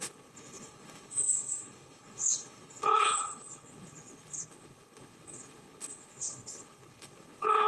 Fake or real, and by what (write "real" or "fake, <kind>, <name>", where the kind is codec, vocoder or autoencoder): fake, codec, HILCodec